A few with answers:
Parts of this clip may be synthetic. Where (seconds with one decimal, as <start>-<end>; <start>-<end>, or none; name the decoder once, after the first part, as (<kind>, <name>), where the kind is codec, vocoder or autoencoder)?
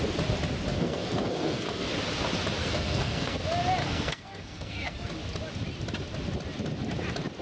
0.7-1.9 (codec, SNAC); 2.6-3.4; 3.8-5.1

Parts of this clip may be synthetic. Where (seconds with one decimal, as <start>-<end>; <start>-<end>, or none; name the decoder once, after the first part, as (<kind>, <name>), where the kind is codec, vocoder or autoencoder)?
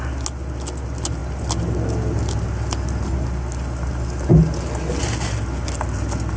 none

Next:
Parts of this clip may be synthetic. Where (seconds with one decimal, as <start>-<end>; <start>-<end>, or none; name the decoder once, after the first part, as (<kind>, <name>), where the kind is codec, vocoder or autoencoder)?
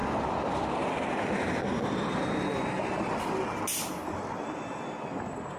none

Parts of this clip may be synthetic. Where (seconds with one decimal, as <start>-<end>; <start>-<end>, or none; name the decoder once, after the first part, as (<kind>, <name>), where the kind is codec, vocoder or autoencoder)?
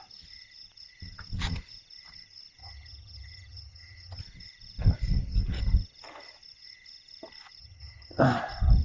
2.6-4.2 (vocoder, HiFi-GAN); 7.6-8.2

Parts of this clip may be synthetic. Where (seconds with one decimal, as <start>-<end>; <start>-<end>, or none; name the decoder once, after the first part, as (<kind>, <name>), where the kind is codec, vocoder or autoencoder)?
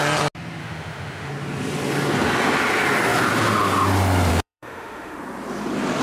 0.6-1.3 (autoencoder, DAC-VAE); 4.3-5.2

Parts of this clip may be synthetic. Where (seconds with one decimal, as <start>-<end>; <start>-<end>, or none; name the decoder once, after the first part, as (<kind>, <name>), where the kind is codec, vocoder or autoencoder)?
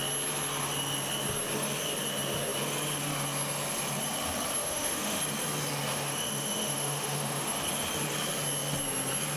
4.6-5.2 (autoencoder, DAC-VAE); 5.9-7.5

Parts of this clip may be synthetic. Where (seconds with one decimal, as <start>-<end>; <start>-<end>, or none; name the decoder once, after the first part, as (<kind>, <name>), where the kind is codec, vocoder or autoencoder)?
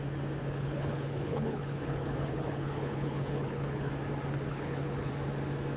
0.4-3.9 (codec, HILCodec); 4.5-5.1